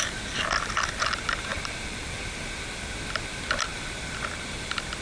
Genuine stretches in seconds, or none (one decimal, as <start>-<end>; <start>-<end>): 0.0-5.0